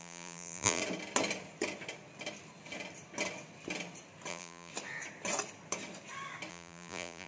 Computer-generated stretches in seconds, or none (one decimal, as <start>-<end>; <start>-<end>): 0.0-0.8; 4.3-4.7; 6.5-7.3